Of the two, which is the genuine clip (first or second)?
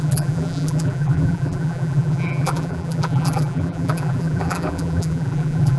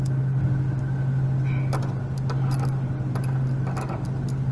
second